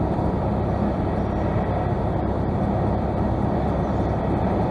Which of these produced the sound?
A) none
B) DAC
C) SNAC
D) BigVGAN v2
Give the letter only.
A